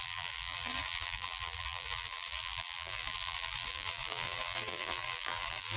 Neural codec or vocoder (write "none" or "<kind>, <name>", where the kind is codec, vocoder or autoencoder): vocoder, BigVGAN v2